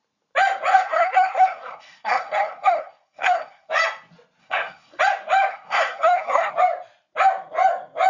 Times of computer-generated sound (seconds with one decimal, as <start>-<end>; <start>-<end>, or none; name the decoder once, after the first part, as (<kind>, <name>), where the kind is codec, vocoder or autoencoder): 0.7-3.7 (codec, SNAC); 4.4-5.0; 5.5-6.5